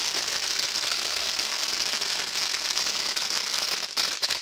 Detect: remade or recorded remade